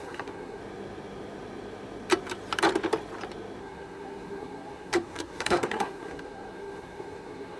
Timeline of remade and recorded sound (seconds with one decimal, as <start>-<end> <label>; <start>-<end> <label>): 0.0-0.6 remade; 0.6-3.6 recorded; 3.6-7.6 remade